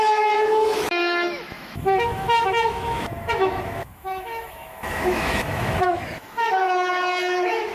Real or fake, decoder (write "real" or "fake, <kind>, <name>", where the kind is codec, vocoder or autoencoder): fake, autoencoder, DAC-VAE